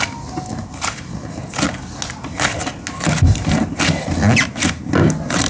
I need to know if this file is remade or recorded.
recorded